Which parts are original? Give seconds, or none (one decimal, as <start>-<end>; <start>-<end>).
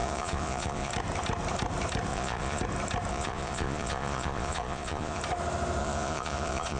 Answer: 0.9-2.1; 2.6-3.1; 5.2-5.8